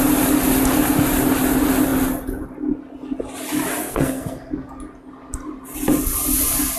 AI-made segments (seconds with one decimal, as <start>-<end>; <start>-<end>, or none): 3.8-4.7